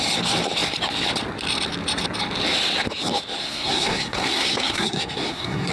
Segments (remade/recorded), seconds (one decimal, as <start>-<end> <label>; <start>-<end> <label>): 0.0-3.4 recorded; 3.4-5.7 remade